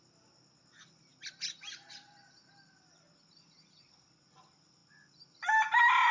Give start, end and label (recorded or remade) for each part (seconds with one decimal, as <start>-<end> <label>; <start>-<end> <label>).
0.0-6.1 recorded